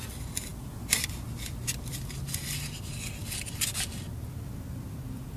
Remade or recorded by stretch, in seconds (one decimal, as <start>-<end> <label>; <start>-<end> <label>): 0.0-5.4 recorded